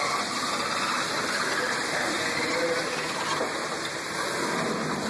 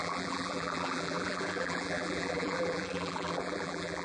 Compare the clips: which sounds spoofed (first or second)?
second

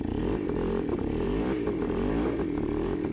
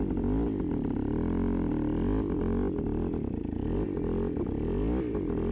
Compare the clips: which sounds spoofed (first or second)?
first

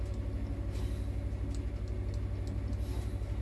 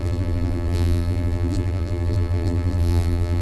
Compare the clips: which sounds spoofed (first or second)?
second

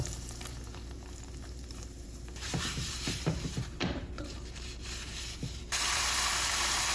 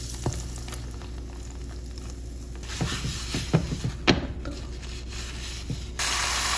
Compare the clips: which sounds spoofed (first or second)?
first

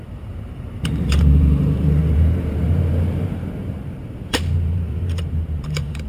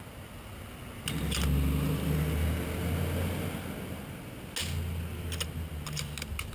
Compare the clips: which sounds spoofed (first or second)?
first